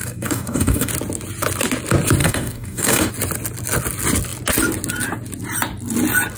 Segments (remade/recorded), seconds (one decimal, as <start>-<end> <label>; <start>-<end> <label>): 0.0-0.9 remade; 0.9-2.2 recorded; 2.2-3.1 remade; 3.1-6.4 recorded